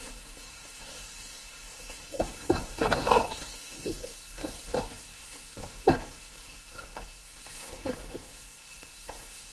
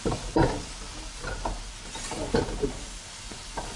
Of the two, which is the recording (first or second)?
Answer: second